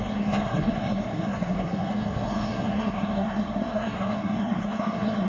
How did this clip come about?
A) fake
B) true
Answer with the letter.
A